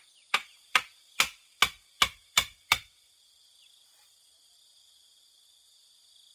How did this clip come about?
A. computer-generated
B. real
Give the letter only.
B